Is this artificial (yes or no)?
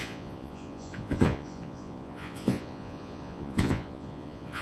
yes